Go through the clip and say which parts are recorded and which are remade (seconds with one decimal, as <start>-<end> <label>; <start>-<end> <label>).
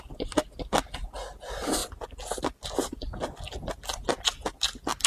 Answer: 0.0-5.1 recorded